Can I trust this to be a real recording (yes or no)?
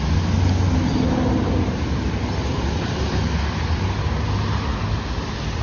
yes